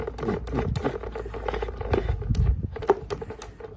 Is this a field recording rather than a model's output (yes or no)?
yes